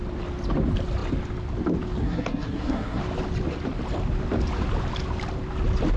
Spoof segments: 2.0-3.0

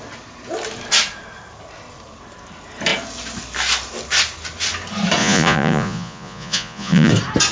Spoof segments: 5.2-7.1